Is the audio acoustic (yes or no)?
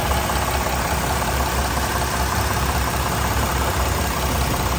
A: yes